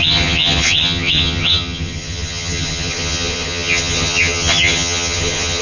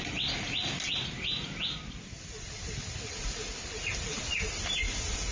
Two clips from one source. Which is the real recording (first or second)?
second